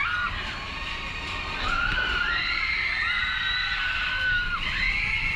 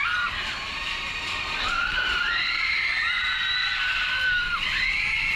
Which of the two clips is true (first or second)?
first